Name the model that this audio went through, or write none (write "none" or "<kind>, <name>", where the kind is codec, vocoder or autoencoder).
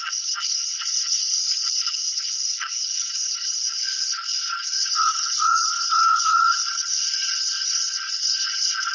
codec, HILCodec